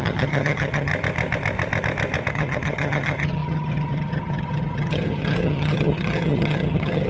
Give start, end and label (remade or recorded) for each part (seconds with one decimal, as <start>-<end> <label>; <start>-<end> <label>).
0.0-0.9 remade; 0.9-2.3 recorded; 2.3-7.1 remade